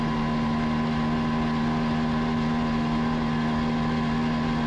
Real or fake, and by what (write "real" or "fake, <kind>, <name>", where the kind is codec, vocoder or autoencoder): real